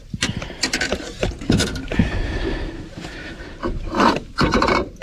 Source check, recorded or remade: remade